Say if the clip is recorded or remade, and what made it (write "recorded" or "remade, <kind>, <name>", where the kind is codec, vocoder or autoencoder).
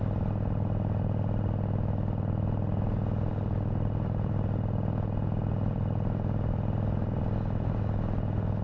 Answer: recorded